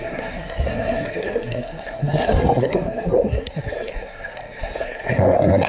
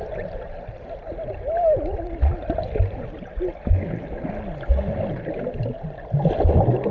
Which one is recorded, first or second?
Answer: second